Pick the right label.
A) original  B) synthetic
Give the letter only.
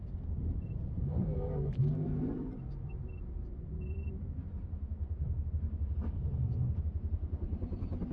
B